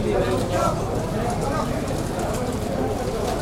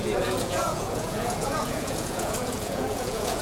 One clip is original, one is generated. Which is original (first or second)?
first